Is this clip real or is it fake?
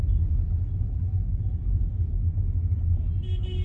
real